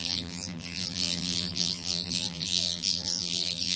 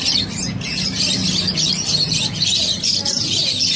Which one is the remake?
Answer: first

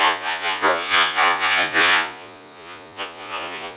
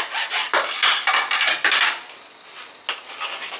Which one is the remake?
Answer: first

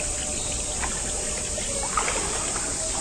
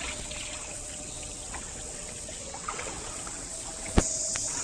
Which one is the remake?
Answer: second